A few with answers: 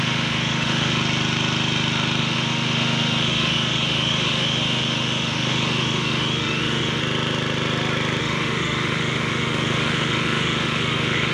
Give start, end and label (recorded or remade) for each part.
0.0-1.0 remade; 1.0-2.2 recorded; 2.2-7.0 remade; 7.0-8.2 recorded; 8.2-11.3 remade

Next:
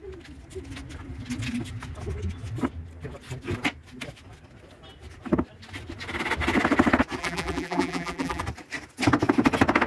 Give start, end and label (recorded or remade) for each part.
0.0-7.2 recorded; 7.2-8.4 remade; 8.4-9.9 recorded

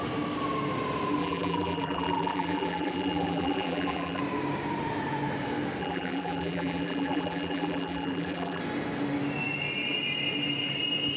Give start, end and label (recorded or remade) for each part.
0.0-1.2 recorded; 1.2-4.2 remade; 4.2-5.8 recorded; 5.8-8.6 remade; 8.6-11.2 recorded

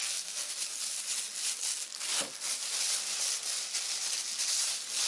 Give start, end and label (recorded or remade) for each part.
0.0-0.5 remade; 0.5-5.1 recorded

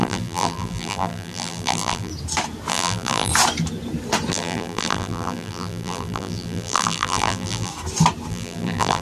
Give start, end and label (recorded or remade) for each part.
0.0-2.1 remade; 2.1-2.7 recorded; 2.7-3.3 remade; 3.3-4.3 recorded; 4.3-7.7 remade; 7.7-8.3 recorded; 8.3-9.0 remade

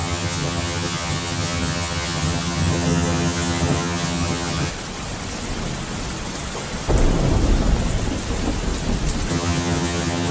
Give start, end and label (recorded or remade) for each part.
0.0-4.7 remade; 4.7-9.3 recorded; 9.3-10.3 remade

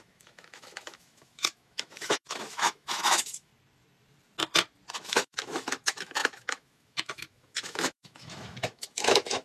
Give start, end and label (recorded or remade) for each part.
0.0-3.5 remade; 3.5-5.0 recorded; 5.0-9.4 remade

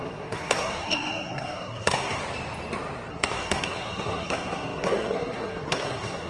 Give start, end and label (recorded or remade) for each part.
0.0-2.2 remade; 2.2-3.1 recorded; 3.1-6.3 remade